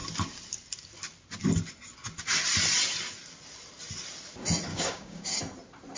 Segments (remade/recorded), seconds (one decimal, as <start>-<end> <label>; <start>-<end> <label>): 0.0-4.7 recorded; 4.7-5.4 remade; 5.4-6.0 recorded